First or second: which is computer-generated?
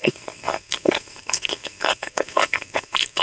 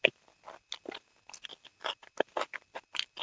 first